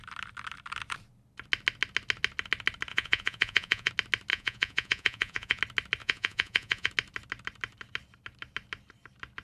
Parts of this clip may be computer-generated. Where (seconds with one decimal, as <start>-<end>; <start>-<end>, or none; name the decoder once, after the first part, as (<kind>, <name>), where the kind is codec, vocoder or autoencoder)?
2.9-3.9 (vocoder, Vocos); 4.3-5.6; 6.0-6.9